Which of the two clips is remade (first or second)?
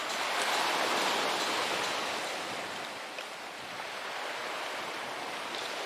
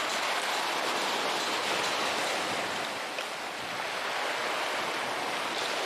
first